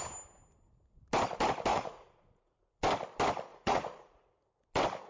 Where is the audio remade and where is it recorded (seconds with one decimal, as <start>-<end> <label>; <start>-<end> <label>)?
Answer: 0.0-1.7 recorded; 1.7-2.8 remade; 2.8-3.5 recorded; 3.5-4.3 remade; 4.3-5.1 recorded